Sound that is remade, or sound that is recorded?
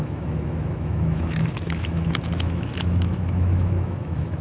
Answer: remade